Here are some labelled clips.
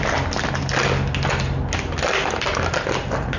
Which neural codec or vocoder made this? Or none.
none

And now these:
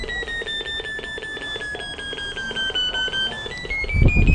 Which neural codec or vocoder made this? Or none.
none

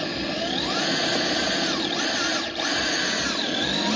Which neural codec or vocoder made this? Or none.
none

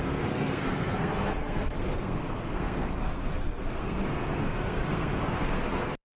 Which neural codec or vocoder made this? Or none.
codec, SNAC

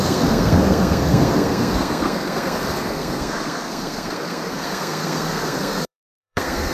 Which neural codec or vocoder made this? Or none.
codec, SNAC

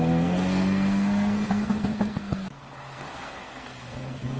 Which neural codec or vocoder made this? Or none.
codec, SNAC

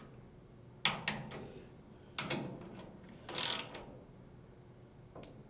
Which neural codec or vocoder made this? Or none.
none